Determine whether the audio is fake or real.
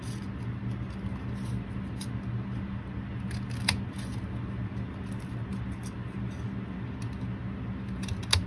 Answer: real